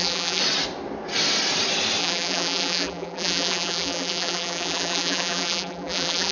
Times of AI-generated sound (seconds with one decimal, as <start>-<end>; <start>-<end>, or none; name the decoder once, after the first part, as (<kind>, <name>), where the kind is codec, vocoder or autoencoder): 0.0-0.4 (vocoder, BigVGAN v2); 2.0-6.3